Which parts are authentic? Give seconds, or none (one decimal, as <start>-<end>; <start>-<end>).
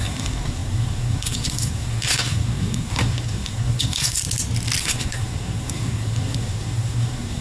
4.2-4.8